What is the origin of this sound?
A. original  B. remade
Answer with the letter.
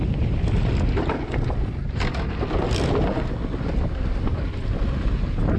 A